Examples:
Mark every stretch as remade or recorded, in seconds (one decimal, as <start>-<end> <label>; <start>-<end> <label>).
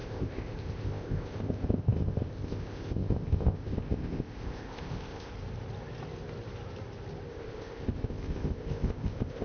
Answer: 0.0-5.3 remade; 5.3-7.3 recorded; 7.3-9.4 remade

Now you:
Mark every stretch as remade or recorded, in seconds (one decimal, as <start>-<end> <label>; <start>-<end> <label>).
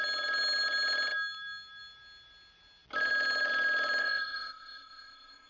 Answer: 0.0-4.0 recorded; 4.0-5.5 remade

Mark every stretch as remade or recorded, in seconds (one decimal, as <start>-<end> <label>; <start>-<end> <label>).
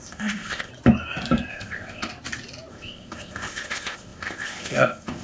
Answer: 0.0-0.7 remade; 0.7-1.5 recorded; 1.5-2.1 remade; 2.1-2.7 recorded; 2.7-5.2 remade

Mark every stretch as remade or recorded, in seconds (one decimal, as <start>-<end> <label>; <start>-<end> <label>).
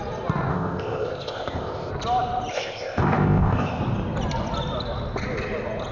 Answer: 0.0-0.5 recorded; 0.5-1.9 remade; 1.9-2.5 recorded; 2.5-3.8 remade; 3.8-5.9 recorded